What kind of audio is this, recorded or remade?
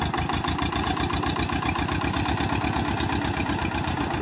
recorded